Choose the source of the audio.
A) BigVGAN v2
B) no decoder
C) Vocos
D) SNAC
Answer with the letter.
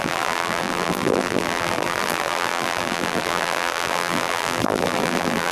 A